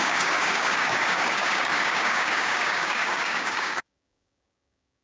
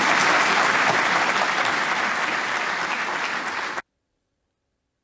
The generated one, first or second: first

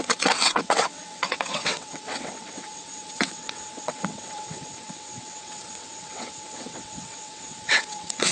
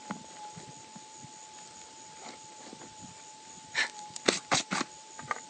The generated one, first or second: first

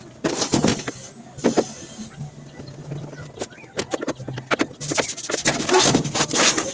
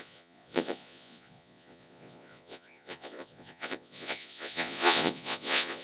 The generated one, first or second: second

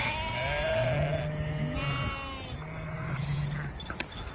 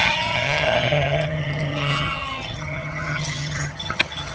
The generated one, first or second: second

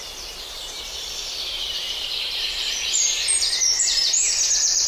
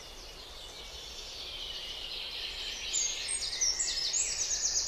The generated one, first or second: first